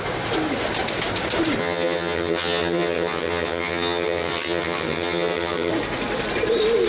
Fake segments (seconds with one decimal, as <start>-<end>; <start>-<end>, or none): 1.6-5.7